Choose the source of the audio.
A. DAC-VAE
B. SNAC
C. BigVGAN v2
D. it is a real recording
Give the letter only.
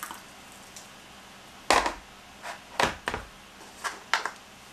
D